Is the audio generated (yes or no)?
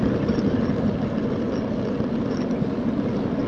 no